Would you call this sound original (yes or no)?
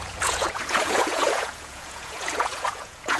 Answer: no